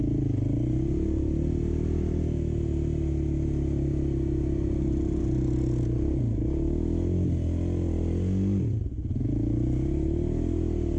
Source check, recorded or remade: recorded